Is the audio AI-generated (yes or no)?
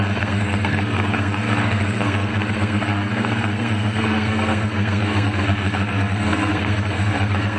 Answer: yes